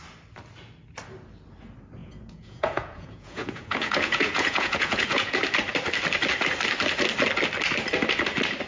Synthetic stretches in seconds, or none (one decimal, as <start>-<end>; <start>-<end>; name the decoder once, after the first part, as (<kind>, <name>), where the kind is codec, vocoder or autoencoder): 2.0-5.4 (vocoder, Vocos)